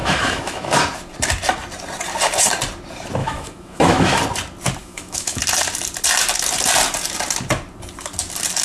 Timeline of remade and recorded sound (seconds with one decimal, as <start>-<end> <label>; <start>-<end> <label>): 0.0-0.8 remade; 0.8-3.2 recorded; 3.2-4.2 remade; 4.2-4.8 recorded; 4.8-5.4 remade; 5.4-8.6 recorded